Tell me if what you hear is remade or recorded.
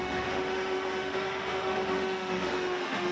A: remade